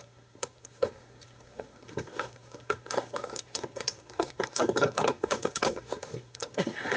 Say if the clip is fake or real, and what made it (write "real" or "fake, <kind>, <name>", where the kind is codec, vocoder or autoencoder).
fake, codec, SNAC